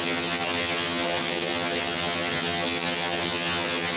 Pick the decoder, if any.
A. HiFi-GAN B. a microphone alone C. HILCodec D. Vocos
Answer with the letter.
A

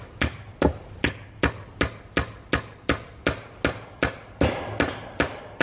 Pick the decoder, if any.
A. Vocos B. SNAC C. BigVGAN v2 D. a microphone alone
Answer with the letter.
D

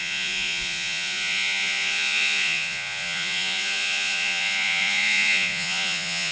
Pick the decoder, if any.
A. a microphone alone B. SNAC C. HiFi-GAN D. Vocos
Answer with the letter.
D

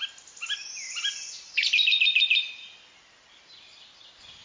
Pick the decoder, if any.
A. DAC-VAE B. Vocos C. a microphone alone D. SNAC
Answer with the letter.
C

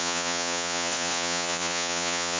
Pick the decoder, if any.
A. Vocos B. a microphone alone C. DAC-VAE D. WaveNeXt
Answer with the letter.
A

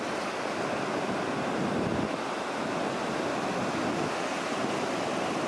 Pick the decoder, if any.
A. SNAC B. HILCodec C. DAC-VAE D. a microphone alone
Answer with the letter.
D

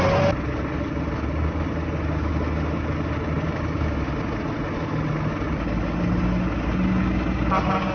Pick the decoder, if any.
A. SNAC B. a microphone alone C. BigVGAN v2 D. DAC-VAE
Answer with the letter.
B